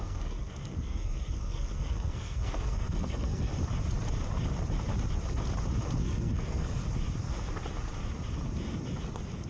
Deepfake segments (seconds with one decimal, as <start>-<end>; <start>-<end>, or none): 0.0-3.5; 6.0-6.8